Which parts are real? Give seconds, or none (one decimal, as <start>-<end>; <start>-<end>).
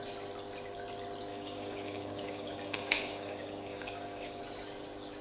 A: 0.0-1.3; 4.4-5.2